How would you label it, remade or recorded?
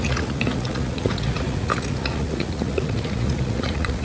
remade